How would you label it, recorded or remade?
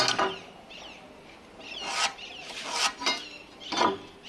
recorded